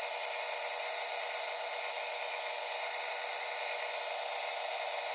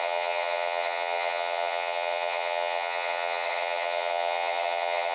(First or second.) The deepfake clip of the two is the second